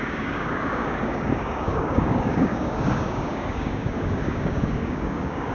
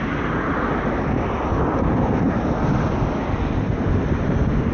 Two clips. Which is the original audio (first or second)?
second